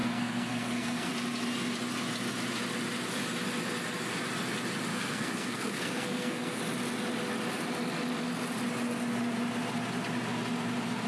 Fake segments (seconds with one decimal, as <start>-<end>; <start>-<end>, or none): 0.0-1.1; 4.9-6.6